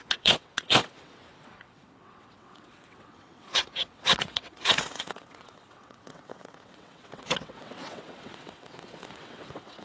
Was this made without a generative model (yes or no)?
no